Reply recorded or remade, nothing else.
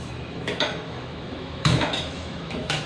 remade